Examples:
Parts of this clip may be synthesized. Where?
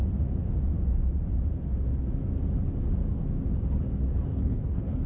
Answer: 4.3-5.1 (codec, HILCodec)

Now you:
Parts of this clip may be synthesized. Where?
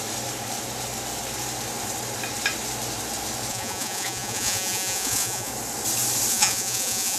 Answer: 3.5-5.5 (vocoder, Vocos); 6.3-7.2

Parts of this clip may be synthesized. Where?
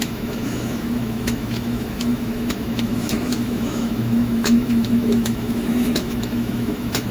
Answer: 0.0-7.1 (autoencoder, DAC-VAE)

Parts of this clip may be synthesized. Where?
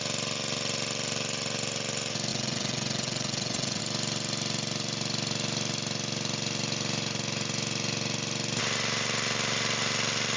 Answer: 2.3-3.8 (vocoder, WaveNeXt)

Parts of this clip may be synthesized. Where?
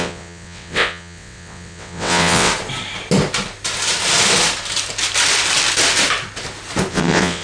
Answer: 0.0-2.5 (vocoder, WaveNeXt); 6.9-7.4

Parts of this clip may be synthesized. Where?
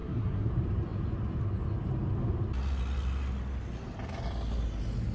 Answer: 0.0-0.5 (codec, SNAC)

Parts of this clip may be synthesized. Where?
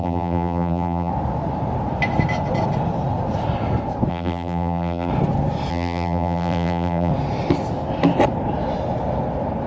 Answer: 0.0-1.1 (vocoder, BigVGAN v2); 4.1-5.1; 5.7-7.1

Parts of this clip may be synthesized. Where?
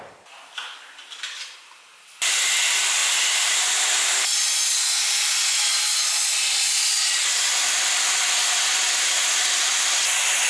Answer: 3.0-7.3 (vocoder, BigVGAN v2); 8.8-9.7